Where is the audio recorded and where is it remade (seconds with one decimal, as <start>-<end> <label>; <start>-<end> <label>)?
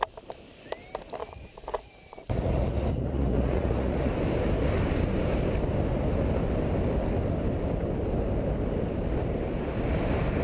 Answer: 0.0-1.2 recorded; 1.2-4.1 remade; 4.1-10.4 recorded